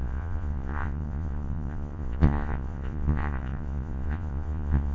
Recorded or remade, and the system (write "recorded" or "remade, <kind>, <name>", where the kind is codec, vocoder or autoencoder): remade, vocoder, Vocos